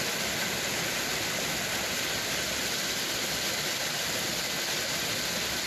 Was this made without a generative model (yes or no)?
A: yes